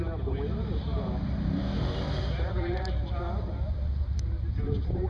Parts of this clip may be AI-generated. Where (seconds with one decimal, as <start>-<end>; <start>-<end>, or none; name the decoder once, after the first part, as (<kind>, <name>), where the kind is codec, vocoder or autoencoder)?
0.0-5.1 (vocoder, BigVGAN v2)